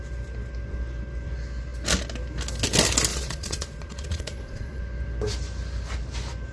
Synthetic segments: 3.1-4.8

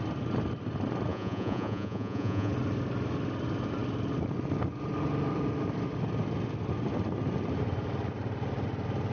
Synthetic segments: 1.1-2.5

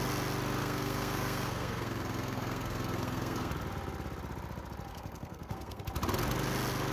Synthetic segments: 0.6-3.5; 4.9-5.8

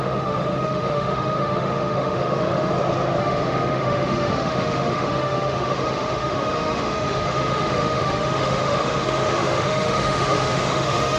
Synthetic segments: 0.0-2.7; 3.2-11.2

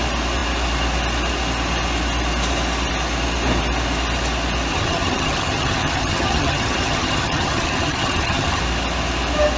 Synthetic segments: 4.7-8.6

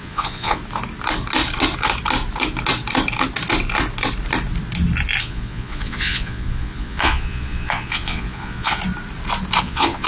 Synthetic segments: 0.0-0.6; 5.2-8.8; 9.6-10.1

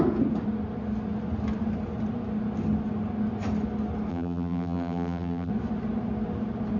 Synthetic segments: 4.1-5.5

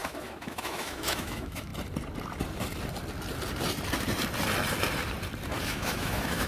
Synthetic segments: 0.0-1.7; 5.6-6.5